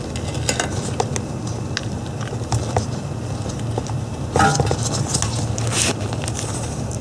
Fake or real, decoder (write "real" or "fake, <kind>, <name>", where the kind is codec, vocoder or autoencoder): real